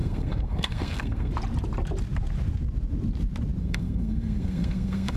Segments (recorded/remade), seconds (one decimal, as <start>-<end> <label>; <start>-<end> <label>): 0.0-1.3 remade; 1.3-3.6 recorded; 3.6-5.2 remade